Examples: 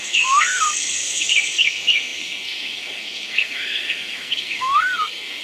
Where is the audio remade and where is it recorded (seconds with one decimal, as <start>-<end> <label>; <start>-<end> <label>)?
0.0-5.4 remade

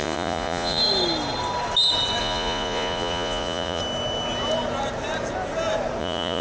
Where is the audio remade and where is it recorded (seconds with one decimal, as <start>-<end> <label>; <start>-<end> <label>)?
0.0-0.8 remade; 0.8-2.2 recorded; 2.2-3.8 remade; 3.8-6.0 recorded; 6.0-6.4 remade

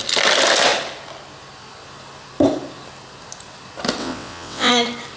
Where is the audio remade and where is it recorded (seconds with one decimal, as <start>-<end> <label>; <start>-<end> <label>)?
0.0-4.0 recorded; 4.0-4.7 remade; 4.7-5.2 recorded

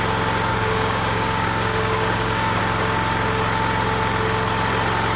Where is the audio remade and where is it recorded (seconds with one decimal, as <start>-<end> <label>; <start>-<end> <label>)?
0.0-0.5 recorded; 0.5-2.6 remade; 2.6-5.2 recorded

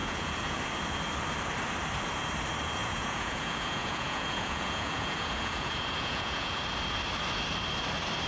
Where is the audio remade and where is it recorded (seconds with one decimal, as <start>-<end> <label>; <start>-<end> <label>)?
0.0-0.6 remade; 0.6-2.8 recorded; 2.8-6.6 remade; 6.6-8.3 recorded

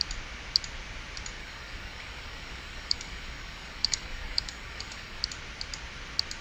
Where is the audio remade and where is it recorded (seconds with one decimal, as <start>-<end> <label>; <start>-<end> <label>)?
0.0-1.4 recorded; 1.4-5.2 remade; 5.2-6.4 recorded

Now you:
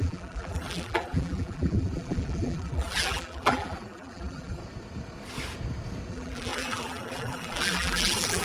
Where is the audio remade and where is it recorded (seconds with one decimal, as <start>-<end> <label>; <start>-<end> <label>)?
0.0-4.6 remade; 4.6-6.1 recorded; 6.1-8.4 remade

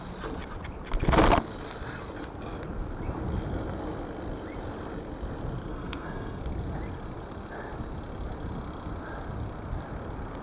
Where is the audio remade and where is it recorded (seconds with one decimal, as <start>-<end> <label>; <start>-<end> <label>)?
0.0-5.7 recorded; 5.7-6.4 remade; 6.4-10.4 recorded